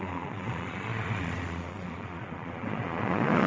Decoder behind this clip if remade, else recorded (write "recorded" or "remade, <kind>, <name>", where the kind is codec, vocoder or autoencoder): remade, vocoder, Vocos